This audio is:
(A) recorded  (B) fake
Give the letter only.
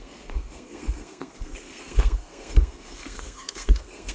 B